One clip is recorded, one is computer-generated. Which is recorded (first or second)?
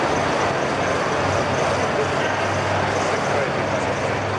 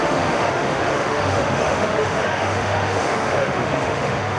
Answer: first